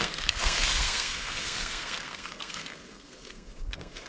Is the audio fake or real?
fake